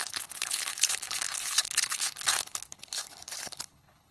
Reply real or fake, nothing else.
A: fake